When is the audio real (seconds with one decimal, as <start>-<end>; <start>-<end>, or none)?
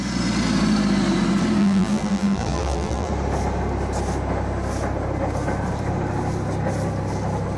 0.0-1.6; 3.1-7.6